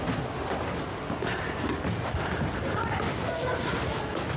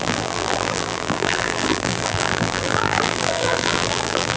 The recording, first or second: first